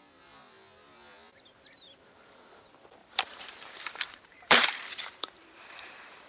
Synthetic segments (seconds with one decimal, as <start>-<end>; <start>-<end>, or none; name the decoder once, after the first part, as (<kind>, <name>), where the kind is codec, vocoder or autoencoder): 3.0-6.3 (vocoder, BigVGAN v2)